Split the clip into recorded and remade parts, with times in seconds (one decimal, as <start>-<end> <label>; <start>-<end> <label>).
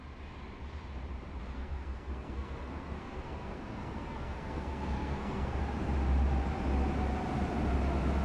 0.0-1.4 recorded; 1.4-5.6 remade; 5.6-8.2 recorded